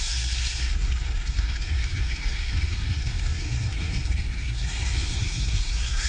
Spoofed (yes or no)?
yes